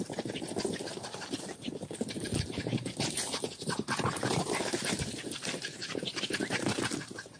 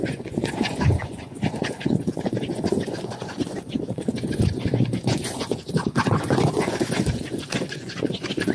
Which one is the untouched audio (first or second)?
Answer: first